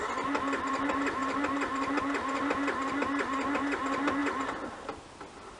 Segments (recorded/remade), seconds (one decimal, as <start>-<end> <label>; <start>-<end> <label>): 0.0-5.6 recorded